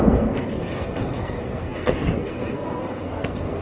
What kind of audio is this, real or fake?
fake